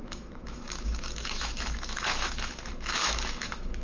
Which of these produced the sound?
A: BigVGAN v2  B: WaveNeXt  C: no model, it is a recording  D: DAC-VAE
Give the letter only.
D